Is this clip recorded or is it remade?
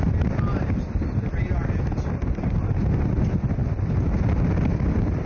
recorded